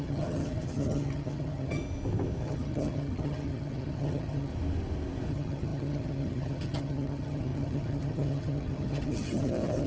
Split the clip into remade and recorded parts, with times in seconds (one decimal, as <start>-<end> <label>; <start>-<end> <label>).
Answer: 0.0-1.8 remade; 1.8-2.4 recorded; 2.4-4.5 remade; 4.5-5.3 recorded; 5.3-9.9 remade